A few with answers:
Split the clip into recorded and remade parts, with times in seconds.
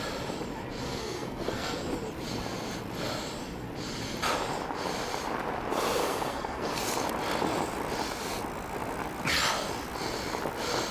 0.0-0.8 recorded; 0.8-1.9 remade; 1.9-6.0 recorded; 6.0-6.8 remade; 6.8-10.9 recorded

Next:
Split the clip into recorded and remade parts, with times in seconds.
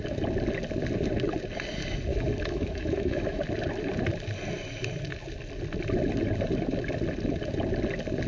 0.0-2.1 recorded; 2.1-3.4 remade; 3.4-8.3 recorded